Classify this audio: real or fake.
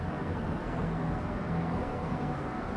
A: fake